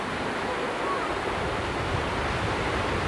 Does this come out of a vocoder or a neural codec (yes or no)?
no